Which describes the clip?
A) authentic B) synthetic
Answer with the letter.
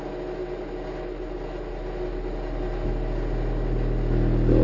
A